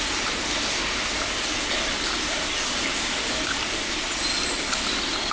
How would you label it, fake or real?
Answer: real